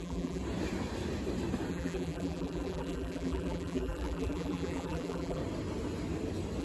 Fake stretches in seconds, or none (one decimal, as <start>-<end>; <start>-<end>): 0.0-0.4; 1.7-5.4